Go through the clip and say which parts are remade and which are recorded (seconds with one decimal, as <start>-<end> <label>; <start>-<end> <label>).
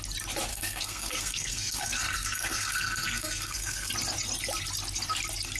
0.0-0.5 recorded; 0.5-3.9 remade; 3.9-5.6 recorded